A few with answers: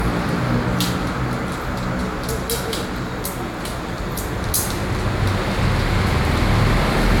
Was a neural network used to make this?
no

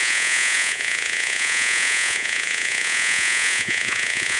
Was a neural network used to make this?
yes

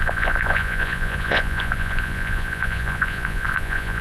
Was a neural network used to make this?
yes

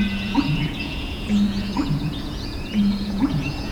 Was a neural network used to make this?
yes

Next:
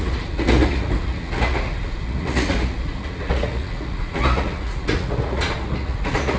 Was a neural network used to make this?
yes